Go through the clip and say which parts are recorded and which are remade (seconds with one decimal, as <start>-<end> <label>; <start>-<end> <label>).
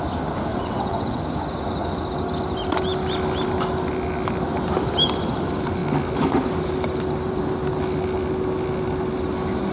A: 0.0-0.5 recorded; 0.5-1.2 remade; 1.2-9.7 recorded